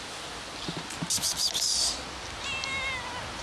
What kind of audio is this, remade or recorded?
recorded